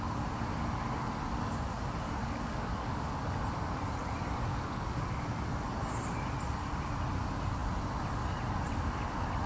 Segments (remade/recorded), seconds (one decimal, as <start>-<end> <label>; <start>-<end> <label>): 0.0-2.2 recorded; 2.2-3.1 remade; 3.1-4.5 recorded; 4.5-5.2 remade; 5.2-9.5 recorded